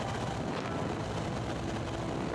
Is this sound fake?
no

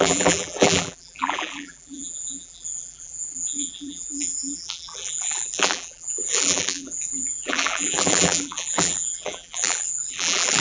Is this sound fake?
yes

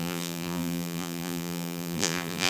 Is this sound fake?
yes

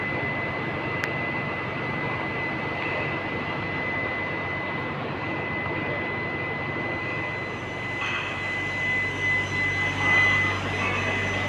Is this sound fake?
no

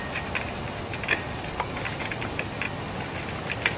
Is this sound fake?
no